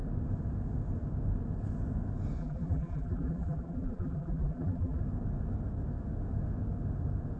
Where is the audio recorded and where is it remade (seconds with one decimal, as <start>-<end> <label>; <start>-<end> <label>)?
0.0-2.4 recorded; 2.4-5.0 remade; 5.0-7.4 recorded